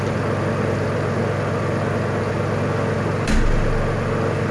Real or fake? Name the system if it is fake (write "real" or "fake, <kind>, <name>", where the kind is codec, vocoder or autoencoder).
real